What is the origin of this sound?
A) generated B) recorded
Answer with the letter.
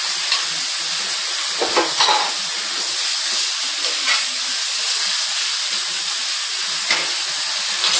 B